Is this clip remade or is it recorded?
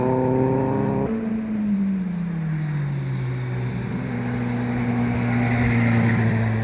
recorded